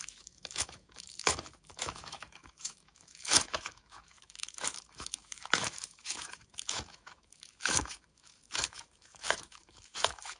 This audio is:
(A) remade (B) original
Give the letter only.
A